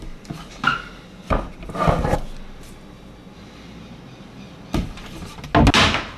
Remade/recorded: recorded